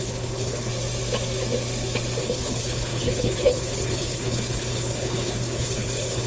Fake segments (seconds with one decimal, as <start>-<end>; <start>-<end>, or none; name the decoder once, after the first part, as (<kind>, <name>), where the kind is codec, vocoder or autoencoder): 0.0-0.7 (codec, HILCodec); 2.2-6.3